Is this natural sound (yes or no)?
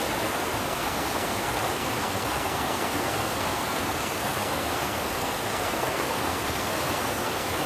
no